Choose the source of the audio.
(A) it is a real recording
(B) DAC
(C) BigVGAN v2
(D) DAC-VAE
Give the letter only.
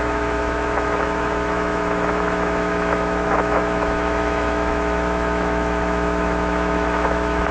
D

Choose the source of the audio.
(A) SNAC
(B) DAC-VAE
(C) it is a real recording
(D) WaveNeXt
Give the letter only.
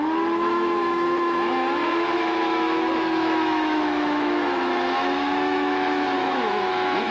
B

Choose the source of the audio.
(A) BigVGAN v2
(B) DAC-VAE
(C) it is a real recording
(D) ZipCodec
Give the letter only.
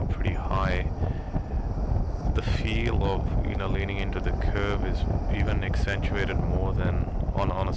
C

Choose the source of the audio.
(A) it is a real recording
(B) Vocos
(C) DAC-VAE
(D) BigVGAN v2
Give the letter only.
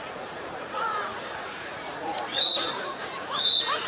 B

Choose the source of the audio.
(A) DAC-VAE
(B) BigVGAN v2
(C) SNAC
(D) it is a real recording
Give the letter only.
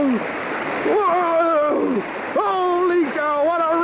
D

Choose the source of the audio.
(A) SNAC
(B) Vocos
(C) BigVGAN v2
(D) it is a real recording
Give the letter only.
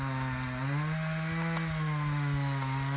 D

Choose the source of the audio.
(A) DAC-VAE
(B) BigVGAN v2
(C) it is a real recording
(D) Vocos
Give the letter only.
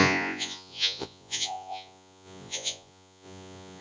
D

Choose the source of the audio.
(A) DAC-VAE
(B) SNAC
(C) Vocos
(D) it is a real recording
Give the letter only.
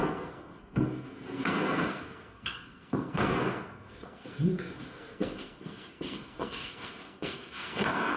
B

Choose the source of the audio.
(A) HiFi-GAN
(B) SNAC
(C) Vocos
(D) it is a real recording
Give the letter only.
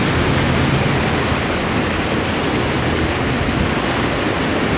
D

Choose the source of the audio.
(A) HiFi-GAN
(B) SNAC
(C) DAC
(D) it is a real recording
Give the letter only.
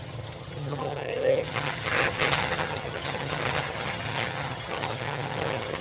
A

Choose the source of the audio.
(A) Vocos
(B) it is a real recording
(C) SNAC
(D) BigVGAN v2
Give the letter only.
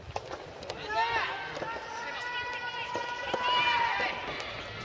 B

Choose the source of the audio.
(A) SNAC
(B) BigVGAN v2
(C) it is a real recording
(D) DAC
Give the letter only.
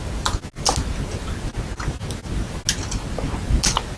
C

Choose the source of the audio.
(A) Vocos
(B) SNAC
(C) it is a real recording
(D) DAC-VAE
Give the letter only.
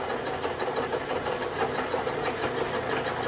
C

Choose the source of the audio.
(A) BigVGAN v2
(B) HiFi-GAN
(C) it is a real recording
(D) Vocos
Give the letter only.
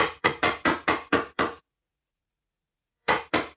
D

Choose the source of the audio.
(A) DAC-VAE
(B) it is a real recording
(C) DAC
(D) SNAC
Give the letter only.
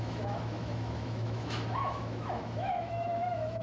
A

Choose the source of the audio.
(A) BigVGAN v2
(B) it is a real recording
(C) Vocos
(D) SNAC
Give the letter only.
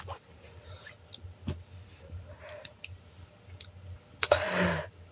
B